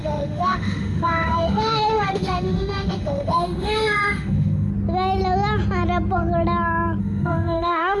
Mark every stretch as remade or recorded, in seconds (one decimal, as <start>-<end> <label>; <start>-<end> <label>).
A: 0.0-4.7 remade; 4.7-7.0 recorded; 7.0-8.0 remade